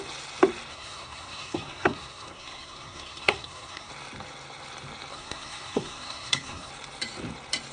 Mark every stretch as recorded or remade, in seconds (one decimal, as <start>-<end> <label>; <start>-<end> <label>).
0.0-0.7 recorded; 0.7-3.9 remade; 3.9-5.1 recorded; 5.1-6.7 remade; 6.7-7.7 recorded